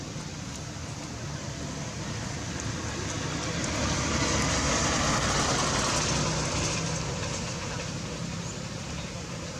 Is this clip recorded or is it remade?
recorded